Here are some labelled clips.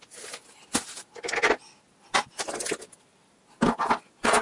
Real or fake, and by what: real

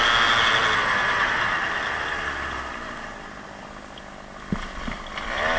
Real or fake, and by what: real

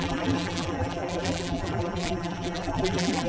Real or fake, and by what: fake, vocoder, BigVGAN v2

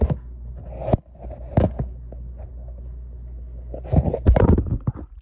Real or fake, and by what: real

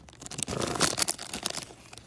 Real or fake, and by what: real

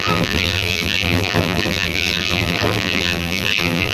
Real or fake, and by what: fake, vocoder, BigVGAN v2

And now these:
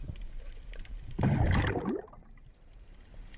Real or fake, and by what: fake, vocoder, BigVGAN v2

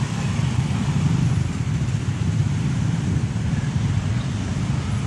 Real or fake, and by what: fake, vocoder, BigVGAN v2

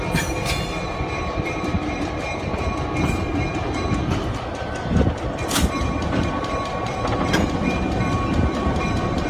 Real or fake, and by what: fake, vocoder, BigVGAN v2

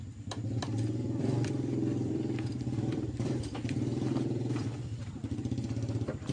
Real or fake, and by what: fake, vocoder, BigVGAN v2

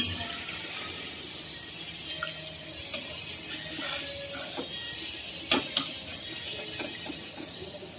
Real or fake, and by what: real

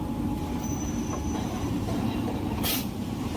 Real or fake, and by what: fake, vocoder, BigVGAN v2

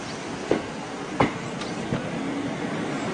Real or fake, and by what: real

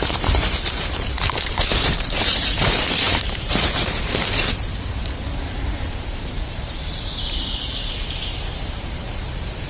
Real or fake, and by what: fake, vocoder, BigVGAN v2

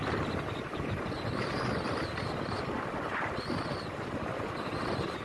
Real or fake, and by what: real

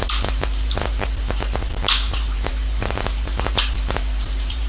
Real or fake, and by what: fake, vocoder, BigVGAN v2